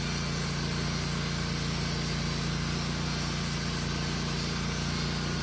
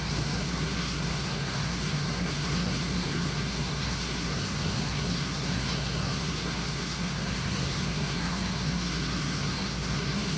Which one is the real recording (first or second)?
first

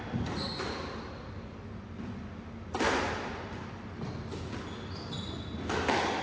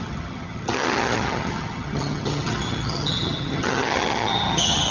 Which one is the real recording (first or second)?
first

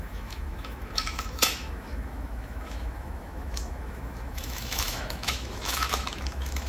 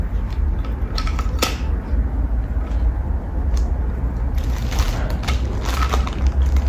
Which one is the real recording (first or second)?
second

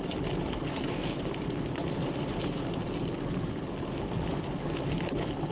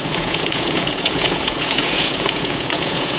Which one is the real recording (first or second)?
first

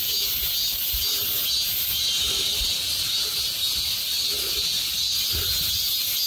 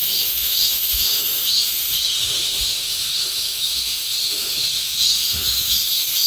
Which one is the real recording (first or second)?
first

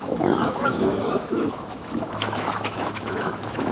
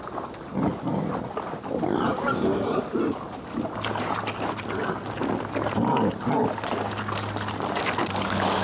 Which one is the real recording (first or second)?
second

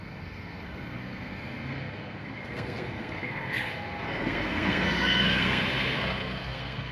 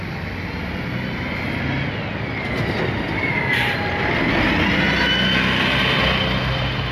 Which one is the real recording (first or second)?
second